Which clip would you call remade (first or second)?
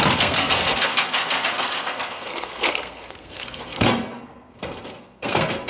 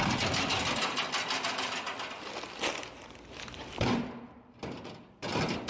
first